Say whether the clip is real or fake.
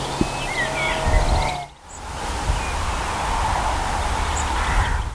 real